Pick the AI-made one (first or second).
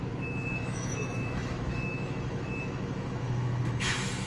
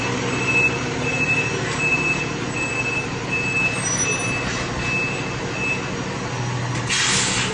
first